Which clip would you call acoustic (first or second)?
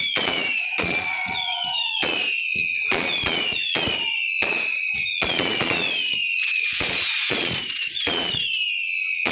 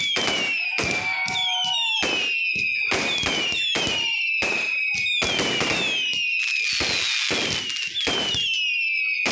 second